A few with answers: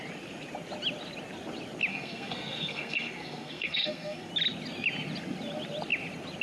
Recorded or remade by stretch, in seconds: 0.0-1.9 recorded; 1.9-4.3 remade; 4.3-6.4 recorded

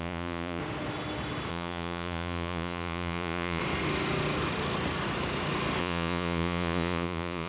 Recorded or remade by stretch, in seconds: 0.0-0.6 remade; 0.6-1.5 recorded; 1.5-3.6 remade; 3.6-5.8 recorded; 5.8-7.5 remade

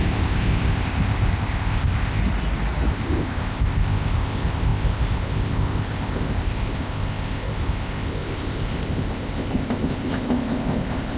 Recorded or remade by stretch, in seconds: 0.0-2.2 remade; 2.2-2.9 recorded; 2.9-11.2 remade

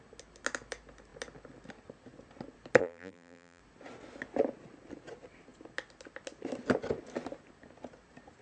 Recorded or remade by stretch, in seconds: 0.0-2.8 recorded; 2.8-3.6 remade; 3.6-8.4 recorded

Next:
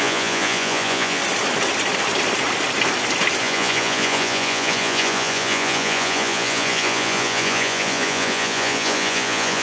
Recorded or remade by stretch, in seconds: 0.0-1.2 remade; 1.2-3.4 recorded; 3.4-9.6 remade